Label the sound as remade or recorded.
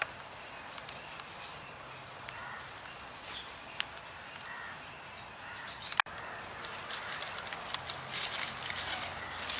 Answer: recorded